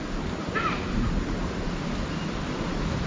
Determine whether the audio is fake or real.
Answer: real